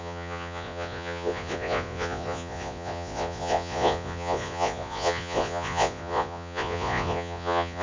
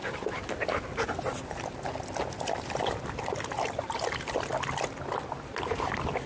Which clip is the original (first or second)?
second